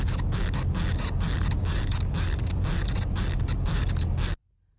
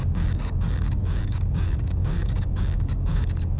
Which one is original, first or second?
first